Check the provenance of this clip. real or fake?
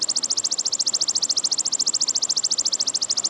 real